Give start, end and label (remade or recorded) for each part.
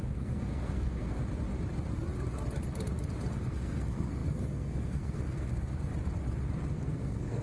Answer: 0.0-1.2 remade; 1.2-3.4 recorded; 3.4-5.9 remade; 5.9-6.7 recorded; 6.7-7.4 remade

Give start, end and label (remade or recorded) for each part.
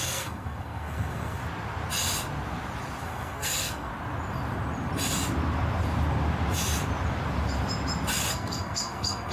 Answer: 0.0-1.4 remade; 1.4-3.0 recorded; 3.0-3.9 remade; 3.9-8.3 recorded; 8.3-9.3 remade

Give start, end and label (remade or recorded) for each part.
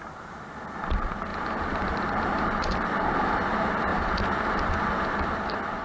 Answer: 0.0-1.3 recorded; 1.3-2.9 remade; 2.9-3.9 recorded; 3.9-4.7 remade; 4.7-5.8 recorded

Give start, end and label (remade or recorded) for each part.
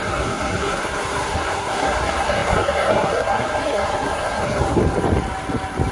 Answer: 0.0-4.8 remade; 4.8-5.9 recorded